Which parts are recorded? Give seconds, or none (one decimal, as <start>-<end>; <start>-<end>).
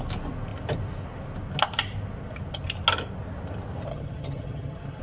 0.0-3.9